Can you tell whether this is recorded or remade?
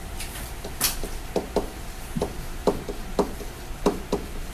recorded